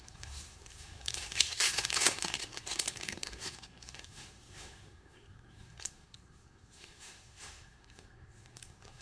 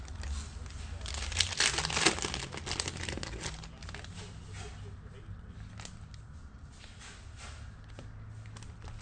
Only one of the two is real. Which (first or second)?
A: second